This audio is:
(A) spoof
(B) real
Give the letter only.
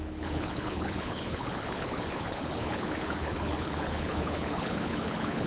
A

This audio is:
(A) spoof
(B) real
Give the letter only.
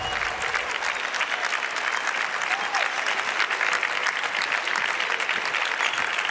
B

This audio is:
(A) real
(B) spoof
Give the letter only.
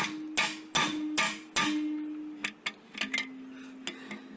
A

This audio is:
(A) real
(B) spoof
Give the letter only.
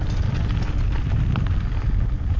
A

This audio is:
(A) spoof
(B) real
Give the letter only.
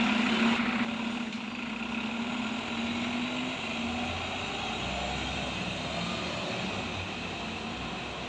B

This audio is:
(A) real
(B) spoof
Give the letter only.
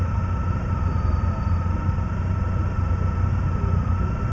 A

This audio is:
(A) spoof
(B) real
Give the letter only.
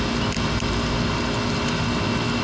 B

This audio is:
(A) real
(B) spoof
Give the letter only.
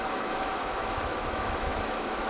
B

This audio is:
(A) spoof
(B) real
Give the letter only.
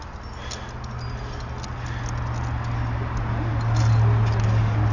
B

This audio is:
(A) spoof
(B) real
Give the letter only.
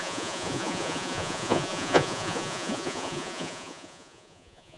A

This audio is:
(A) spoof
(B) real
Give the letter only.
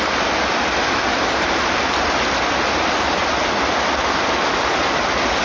B